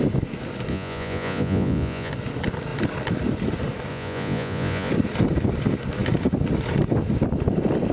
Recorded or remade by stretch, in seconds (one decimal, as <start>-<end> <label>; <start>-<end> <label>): 0.0-0.7 recorded; 0.7-2.1 remade; 2.1-3.9 recorded; 3.9-4.9 remade; 4.9-7.9 recorded